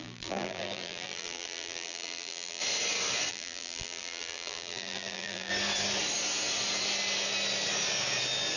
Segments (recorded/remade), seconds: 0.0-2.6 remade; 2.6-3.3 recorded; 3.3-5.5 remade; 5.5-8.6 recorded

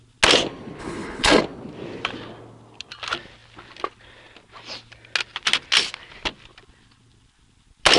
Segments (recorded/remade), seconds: 0.0-0.8 recorded; 0.8-1.4 remade; 1.4-8.0 recorded

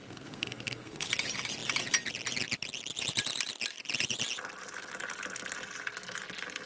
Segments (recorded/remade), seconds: 0.0-1.1 remade; 1.1-6.7 recorded